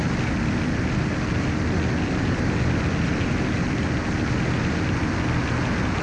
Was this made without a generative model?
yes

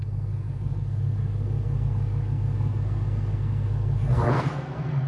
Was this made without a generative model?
no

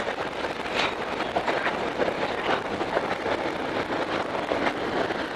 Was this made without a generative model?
yes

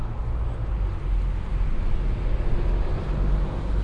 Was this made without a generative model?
yes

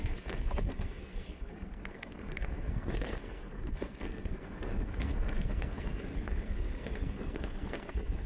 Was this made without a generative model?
no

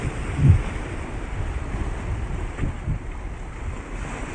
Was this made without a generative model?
yes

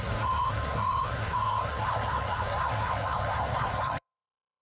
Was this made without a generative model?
no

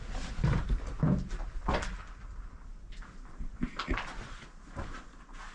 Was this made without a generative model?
yes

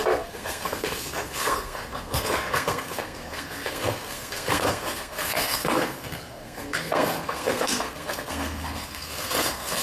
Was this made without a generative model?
no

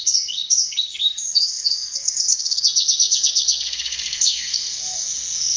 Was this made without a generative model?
no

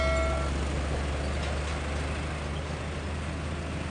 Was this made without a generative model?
yes